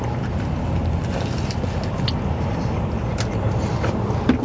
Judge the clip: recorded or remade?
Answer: recorded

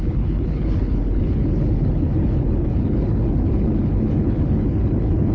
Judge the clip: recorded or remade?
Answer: remade